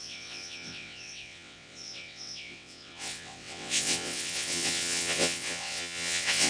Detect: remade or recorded remade